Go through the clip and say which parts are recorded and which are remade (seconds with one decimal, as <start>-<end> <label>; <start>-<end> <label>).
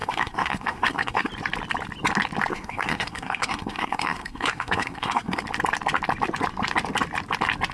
0.0-1.3 remade; 1.3-2.5 recorded; 2.5-5.4 remade; 5.4-7.7 recorded